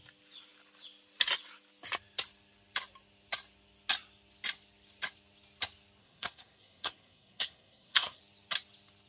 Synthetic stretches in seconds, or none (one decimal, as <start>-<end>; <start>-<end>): 6.0-8.2